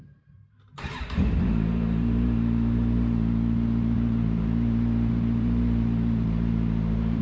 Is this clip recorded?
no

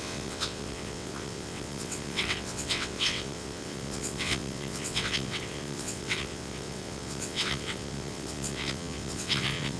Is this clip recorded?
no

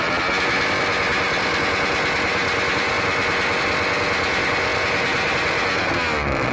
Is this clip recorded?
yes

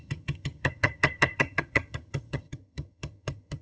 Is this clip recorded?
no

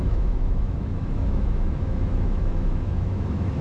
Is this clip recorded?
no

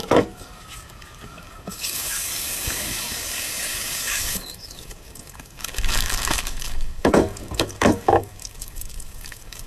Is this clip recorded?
no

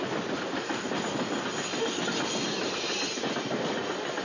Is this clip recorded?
yes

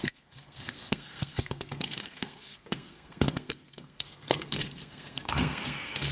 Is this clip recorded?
no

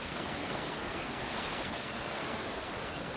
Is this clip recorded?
no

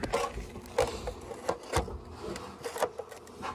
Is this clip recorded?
yes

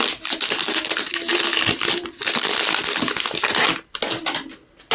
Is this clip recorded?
yes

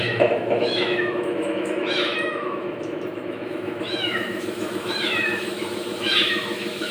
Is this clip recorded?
no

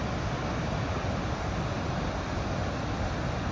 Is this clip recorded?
yes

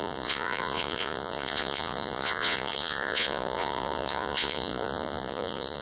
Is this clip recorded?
no